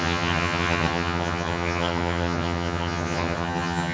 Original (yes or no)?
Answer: no